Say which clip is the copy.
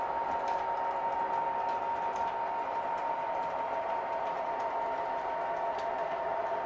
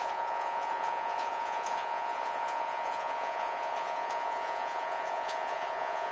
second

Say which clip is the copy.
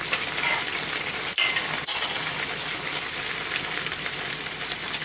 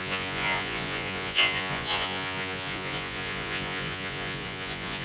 second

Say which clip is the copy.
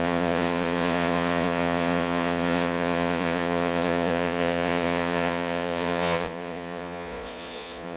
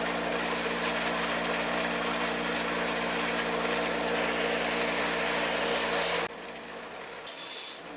first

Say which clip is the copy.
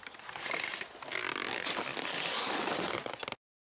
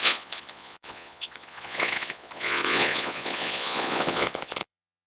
second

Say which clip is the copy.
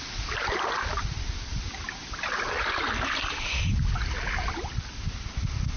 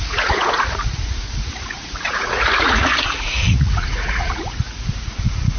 second